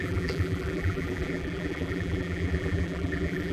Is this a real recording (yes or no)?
no